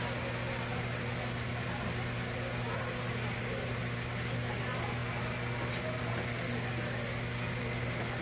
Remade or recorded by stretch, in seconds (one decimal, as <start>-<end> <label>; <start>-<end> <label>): 0.0-8.2 recorded